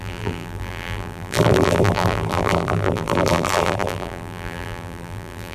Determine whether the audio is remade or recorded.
remade